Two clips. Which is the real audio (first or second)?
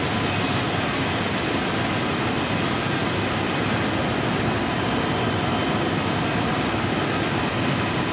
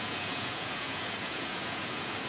first